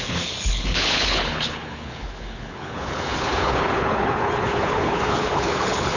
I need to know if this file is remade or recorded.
remade